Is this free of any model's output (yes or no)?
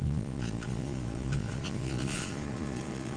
no